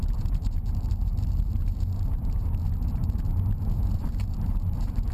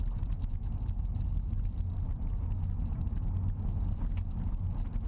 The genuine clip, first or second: second